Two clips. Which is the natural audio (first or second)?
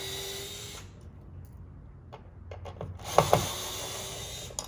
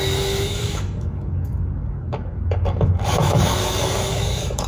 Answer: first